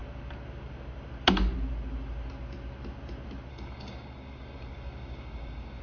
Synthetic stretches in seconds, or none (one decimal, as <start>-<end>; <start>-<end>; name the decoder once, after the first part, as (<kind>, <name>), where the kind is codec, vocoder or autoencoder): 3.5-5.8 (codec, DAC)